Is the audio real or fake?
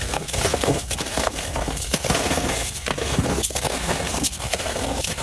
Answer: fake